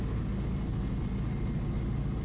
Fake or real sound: real